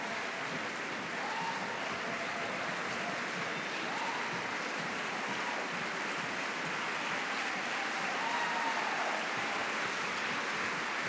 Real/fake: real